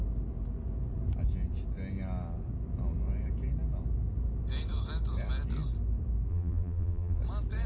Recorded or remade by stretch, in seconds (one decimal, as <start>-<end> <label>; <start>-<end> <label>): 0.0-6.3 recorded; 6.3-7.2 remade; 7.2-7.7 recorded